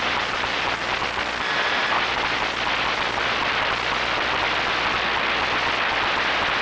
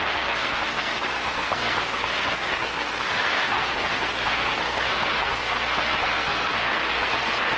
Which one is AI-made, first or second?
second